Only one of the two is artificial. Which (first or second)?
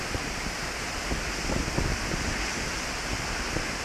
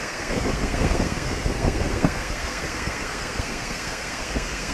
second